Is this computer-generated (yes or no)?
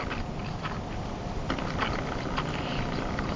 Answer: no